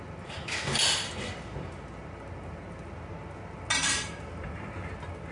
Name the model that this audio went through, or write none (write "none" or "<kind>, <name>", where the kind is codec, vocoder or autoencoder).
none